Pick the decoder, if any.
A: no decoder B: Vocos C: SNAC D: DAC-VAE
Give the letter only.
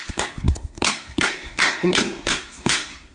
C